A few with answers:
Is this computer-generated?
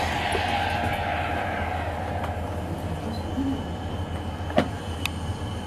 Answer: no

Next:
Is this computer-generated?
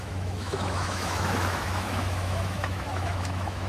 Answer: yes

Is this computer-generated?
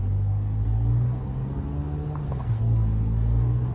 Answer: yes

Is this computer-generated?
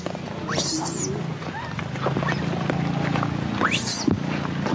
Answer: no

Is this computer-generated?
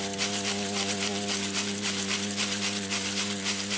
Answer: no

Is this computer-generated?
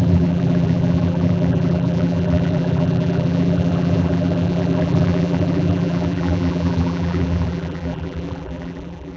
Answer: yes